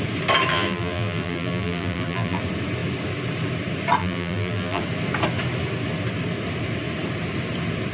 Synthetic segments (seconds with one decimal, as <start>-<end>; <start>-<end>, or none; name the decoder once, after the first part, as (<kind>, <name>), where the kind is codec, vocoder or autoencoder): 0.5-2.4 (vocoder, BigVGAN v2); 4.0-4.8